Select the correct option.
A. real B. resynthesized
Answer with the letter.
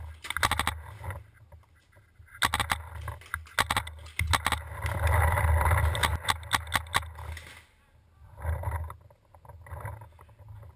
A